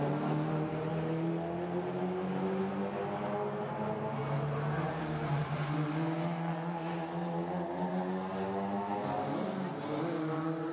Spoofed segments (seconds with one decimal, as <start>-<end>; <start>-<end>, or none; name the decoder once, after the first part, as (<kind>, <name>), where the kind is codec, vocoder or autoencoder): none